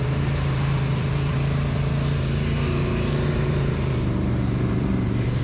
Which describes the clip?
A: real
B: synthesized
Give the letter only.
B